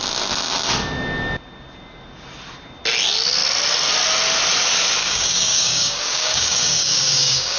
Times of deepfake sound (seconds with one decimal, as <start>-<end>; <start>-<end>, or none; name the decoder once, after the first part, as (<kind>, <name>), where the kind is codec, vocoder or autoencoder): 5.0-7.6 (codec, DAC)